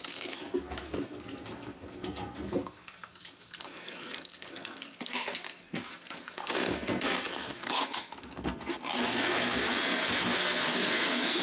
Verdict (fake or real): fake